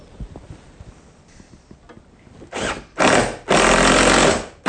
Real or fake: real